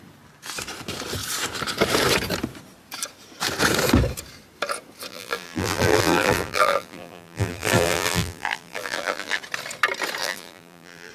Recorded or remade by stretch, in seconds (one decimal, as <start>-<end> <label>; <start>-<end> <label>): 0.0-5.1 recorded; 5.1-9.4 remade; 9.4-10.2 recorded; 10.2-11.1 remade